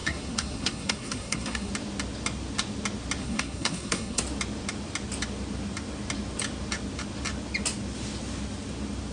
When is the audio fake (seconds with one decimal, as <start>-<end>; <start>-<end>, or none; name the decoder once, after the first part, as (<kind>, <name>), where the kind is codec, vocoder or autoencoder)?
0.0-1.7 (codec, SNAC); 3.2-4.2